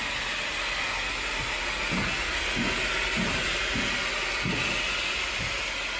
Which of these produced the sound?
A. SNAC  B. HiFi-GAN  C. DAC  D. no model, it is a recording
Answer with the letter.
D